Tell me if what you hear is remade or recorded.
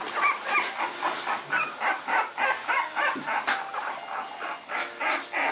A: recorded